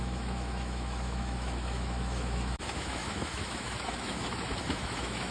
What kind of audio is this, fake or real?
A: fake